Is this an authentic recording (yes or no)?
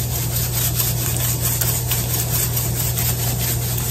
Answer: yes